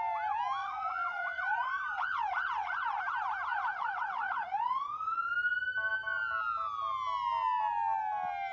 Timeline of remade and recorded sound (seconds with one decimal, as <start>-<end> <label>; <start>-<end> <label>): 0.0-0.6 recorded; 0.6-3.0 remade; 3.0-3.5 recorded; 3.5-5.3 remade; 5.3-8.5 recorded